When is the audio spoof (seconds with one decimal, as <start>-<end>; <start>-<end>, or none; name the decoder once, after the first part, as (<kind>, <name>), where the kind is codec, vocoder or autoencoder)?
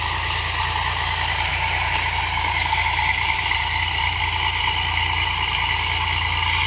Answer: 1.5-4.2 (vocoder, BigVGAN v2)